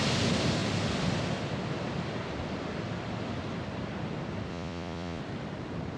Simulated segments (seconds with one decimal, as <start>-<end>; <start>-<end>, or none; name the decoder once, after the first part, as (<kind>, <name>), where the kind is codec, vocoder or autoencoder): 4.5-5.2 (vocoder, Vocos)

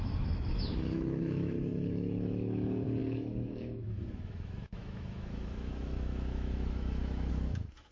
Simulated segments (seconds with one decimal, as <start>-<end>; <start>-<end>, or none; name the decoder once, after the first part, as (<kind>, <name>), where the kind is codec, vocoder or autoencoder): 0.0-7.9 (autoencoder, DAC-VAE)

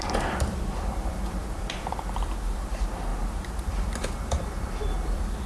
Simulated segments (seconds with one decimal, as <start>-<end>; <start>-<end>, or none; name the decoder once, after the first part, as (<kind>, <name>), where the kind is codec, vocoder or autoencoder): 0.0-3.1 (vocoder, BigVGAN v2); 3.7-5.5